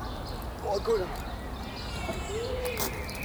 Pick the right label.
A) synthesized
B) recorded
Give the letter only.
B